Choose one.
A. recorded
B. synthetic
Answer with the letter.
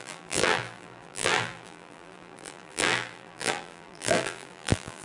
B